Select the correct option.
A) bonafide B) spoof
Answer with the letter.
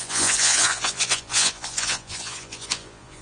B